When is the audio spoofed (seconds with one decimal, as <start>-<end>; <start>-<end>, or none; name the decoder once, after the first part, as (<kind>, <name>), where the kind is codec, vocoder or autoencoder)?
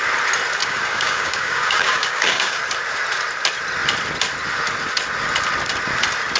0.6-2.6 (codec, DAC)